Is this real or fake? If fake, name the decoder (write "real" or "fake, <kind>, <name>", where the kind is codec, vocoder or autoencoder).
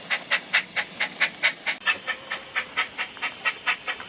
real